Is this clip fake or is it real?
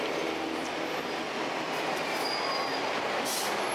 real